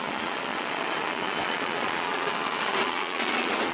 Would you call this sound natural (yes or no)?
no